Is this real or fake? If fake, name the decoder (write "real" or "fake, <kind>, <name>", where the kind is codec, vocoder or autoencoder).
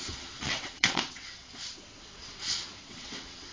fake, vocoder, WaveNeXt